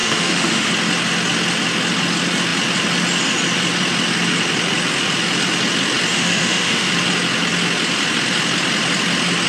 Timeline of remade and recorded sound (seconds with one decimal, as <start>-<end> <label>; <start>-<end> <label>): 0.0-0.7 remade; 0.7-6.1 recorded; 6.1-6.9 remade; 6.9-9.5 recorded